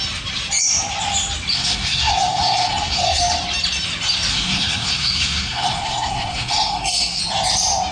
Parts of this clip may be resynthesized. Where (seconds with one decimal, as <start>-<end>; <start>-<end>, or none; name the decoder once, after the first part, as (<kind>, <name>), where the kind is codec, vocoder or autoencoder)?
1.5-3.2 (codec, SNAC); 4.3-7.2